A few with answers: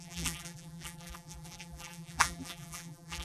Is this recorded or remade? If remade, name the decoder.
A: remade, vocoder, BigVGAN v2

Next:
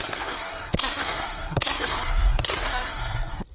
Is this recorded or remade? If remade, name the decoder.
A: remade, codec, SNAC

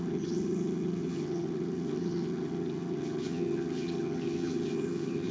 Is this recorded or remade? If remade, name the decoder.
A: remade, vocoder, HiFi-GAN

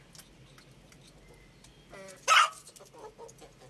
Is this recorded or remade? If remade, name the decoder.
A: recorded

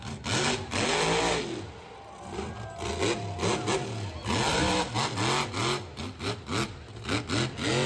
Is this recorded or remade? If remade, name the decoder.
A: recorded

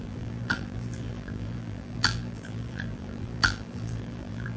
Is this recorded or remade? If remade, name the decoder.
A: remade, vocoder, BigVGAN v2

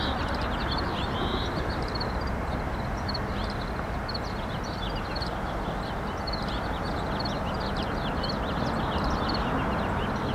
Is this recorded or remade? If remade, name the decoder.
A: recorded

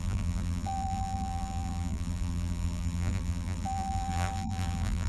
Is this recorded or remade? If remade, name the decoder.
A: remade, vocoder, BigVGAN v2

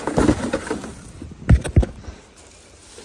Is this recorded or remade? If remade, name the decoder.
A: recorded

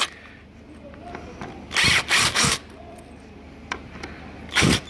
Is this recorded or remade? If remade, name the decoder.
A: recorded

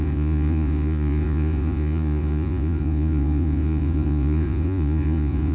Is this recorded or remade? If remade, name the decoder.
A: remade, vocoder, Vocos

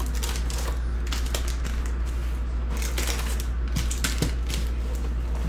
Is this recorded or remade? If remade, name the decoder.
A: recorded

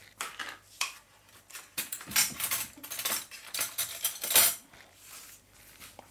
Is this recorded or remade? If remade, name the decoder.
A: remade, vocoder, BigVGAN v2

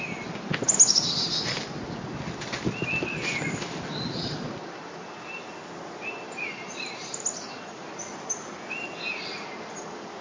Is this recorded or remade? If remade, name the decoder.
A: recorded